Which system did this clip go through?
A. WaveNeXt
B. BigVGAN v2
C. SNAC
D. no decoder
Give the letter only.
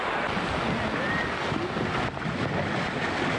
D